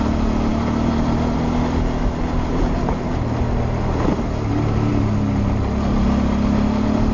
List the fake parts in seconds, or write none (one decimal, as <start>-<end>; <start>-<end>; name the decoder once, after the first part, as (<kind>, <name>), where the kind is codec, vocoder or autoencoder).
none